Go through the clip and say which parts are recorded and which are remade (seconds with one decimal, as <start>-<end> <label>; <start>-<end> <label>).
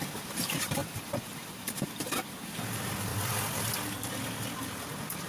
0.0-3.1 remade; 3.1-4.1 recorded; 4.1-5.3 remade